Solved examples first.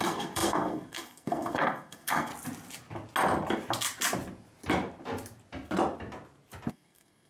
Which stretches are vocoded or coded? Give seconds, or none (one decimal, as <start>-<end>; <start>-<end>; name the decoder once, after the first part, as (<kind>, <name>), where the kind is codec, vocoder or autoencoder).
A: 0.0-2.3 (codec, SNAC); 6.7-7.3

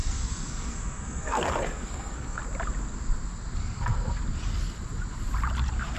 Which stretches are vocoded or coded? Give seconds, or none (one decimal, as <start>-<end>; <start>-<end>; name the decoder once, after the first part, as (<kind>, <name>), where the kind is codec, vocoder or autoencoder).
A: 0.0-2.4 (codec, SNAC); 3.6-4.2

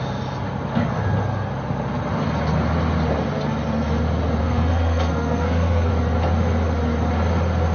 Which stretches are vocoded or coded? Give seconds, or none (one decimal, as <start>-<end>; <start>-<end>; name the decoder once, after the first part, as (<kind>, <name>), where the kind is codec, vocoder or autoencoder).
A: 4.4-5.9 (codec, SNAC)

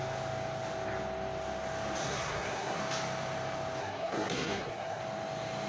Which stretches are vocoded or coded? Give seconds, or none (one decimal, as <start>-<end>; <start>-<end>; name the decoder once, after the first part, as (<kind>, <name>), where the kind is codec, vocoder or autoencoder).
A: 2.0-2.8 (codec, SNAC); 3.8-5.0